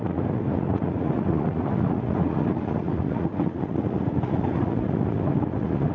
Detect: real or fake fake